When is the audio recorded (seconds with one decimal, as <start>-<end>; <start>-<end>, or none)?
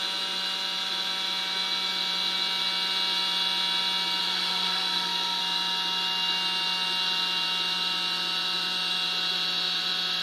0.0-4.2; 5.4-10.2